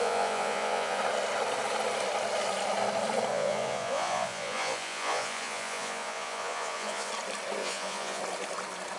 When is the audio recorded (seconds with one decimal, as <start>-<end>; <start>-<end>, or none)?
1.0-3.3; 7.1-7.6; 8.2-9.0

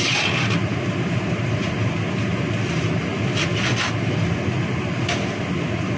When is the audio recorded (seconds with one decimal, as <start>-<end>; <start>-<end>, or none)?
0.0-6.0

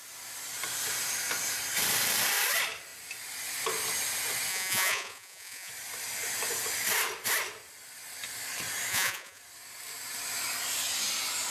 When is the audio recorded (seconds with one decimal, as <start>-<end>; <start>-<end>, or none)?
0.0-4.5; 5.7-8.9; 9.4-11.5

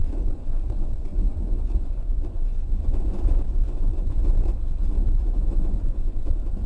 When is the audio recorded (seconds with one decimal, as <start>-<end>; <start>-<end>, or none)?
4.2-5.0

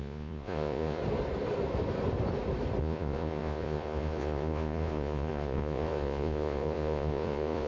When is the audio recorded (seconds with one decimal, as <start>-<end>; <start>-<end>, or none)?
1.0-2.8

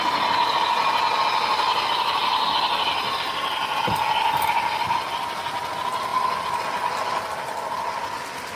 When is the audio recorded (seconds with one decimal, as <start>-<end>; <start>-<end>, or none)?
0.0-8.6

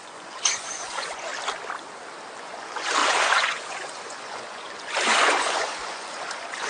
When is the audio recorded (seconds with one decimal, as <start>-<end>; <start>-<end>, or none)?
1.3-2.4